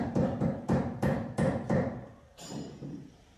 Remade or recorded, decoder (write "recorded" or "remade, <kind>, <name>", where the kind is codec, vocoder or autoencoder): remade, vocoder, BigVGAN v2